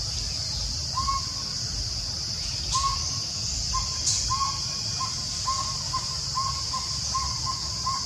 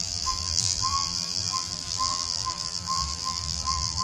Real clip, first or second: first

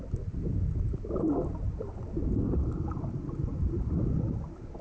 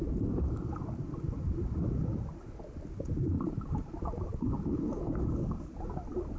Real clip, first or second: first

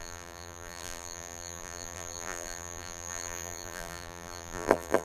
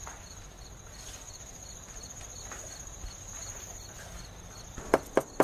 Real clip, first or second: second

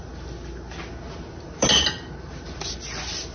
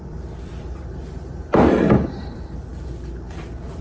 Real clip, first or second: first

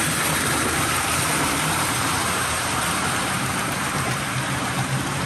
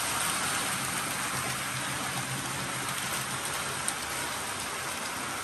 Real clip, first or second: second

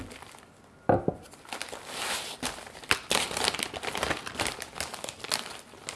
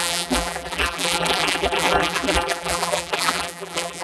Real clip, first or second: first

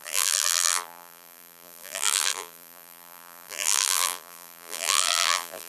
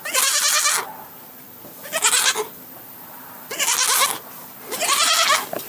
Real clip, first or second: second